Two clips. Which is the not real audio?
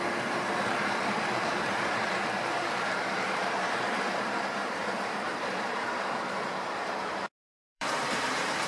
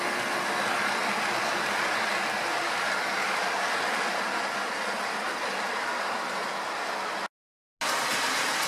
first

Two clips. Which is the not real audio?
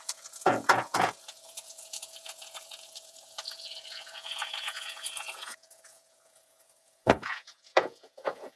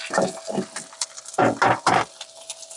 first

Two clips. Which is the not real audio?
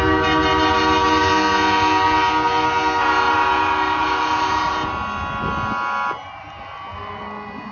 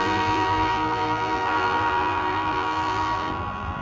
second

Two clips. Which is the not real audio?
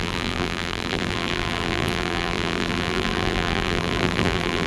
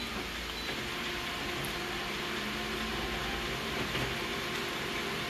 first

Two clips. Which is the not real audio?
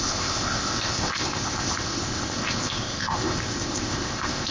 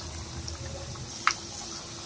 first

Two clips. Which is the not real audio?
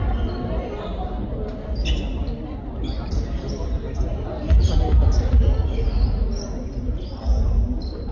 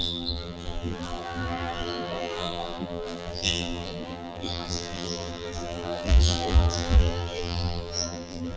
second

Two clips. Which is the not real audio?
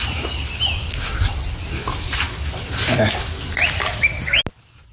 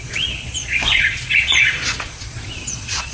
second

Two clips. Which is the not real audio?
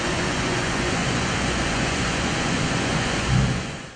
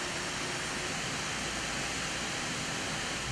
first